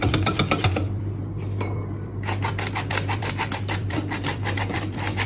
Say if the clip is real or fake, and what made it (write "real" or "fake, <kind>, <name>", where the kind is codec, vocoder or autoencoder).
fake, vocoder, BigVGAN v2